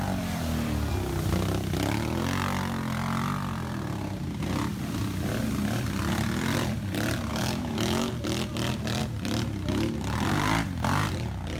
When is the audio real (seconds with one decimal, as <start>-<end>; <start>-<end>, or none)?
0.0-7.3; 8.1-11.6